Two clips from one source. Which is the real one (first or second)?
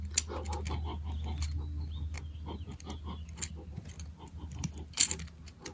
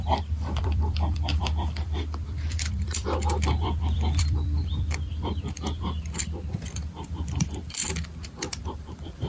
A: first